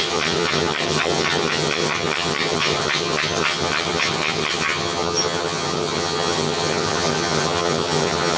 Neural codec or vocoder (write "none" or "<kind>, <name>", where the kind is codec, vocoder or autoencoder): vocoder, HiFi-GAN